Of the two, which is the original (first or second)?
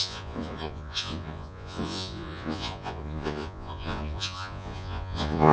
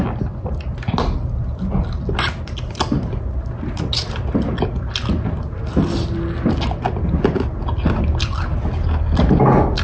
second